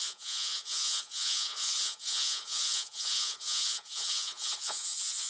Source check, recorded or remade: remade